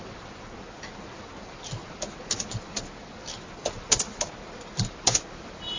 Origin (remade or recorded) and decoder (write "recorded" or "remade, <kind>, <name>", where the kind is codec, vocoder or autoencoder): recorded